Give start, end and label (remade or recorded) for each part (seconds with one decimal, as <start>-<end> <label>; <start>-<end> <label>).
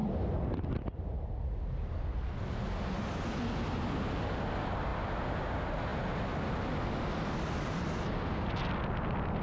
0.0-9.4 recorded